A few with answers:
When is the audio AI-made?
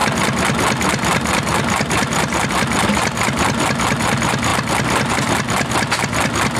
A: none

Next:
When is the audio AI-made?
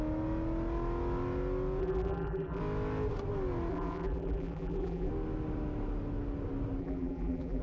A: 1.8-2.6; 3.7-5.1; 6.8-7.6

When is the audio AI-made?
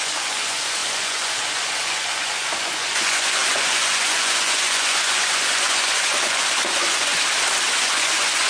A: 0.0-7.1; 7.7-8.5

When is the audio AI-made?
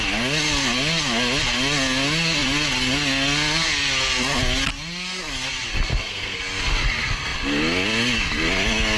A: 5.9-6.4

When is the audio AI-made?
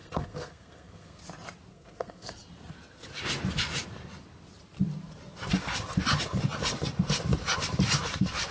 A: 0.0-1.2; 1.7-2.3